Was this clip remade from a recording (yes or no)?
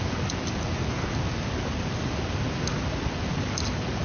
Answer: no